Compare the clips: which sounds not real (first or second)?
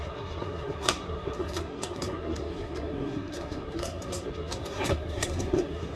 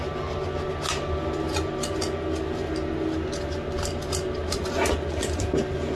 first